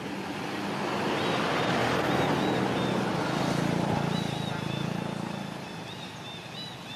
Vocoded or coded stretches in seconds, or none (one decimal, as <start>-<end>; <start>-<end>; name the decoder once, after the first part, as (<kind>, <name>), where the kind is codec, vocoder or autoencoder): none